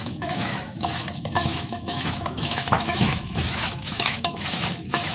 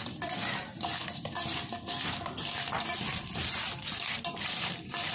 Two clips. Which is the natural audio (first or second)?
second